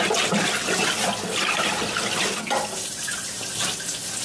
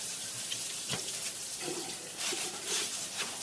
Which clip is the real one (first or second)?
first